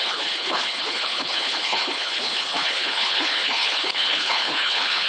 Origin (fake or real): fake